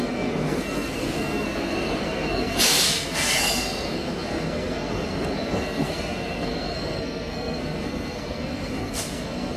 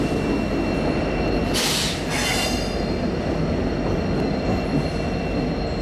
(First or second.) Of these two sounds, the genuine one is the second